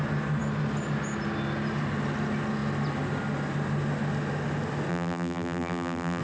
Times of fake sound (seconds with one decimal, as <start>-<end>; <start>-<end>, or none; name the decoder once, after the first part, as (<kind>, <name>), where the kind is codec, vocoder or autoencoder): 4.9-6.2 (vocoder, BigVGAN v2)